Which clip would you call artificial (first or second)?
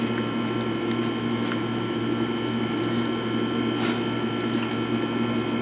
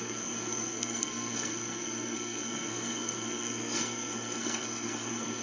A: second